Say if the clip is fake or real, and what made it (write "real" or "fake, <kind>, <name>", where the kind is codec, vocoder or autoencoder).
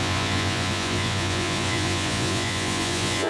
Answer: fake, vocoder, Vocos